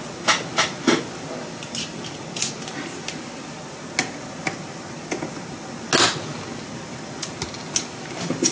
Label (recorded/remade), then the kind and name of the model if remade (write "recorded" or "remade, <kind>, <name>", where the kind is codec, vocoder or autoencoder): recorded